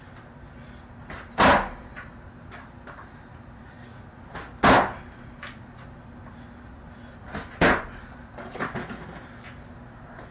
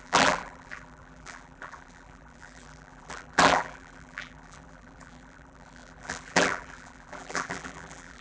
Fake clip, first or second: second